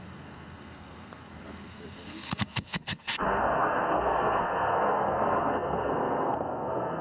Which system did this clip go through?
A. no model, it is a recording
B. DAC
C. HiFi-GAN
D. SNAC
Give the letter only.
D